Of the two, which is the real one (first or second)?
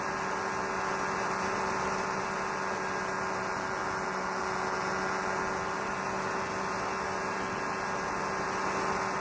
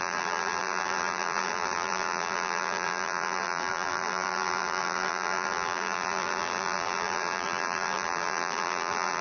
first